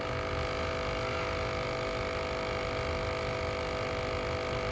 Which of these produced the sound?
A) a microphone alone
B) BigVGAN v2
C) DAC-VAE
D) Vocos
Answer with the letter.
A